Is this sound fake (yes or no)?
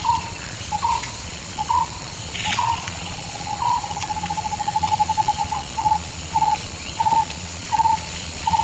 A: yes